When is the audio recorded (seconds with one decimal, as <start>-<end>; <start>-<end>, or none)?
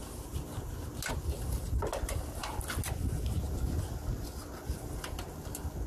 0.0-5.9